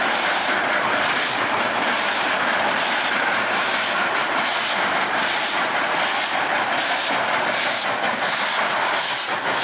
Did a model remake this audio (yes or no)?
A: yes